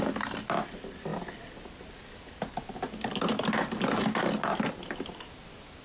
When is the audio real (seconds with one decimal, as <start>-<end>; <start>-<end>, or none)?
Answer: 0.0-5.8